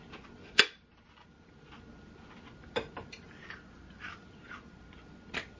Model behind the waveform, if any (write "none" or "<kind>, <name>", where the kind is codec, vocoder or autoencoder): none